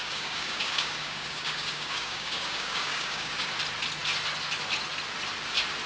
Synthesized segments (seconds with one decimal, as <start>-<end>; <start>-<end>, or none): 0.0-3.5